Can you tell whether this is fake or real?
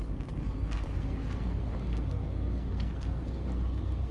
fake